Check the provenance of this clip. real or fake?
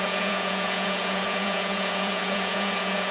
fake